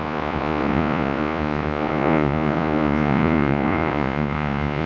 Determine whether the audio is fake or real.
fake